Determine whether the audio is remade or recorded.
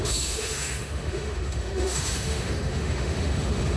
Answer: remade